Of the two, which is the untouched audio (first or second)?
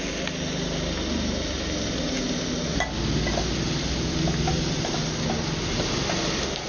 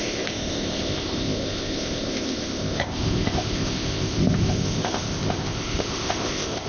first